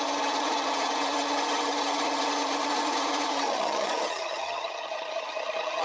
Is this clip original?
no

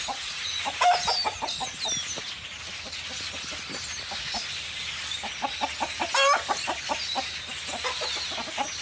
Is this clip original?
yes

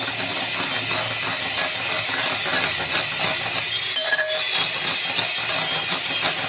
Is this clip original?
yes